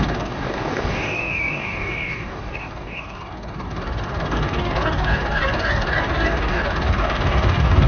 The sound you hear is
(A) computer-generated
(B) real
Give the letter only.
A